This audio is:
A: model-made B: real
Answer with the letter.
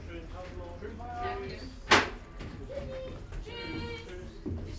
B